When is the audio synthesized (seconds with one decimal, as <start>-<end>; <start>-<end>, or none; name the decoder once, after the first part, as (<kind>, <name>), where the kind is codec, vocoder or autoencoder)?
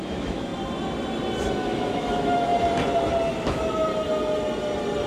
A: 0.0-0.5 (autoencoder, DAC-VAE); 1.6-2.5; 3.3-3.9